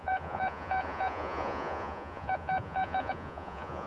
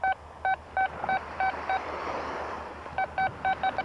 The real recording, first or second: second